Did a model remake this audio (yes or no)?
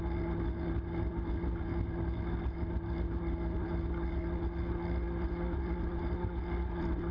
no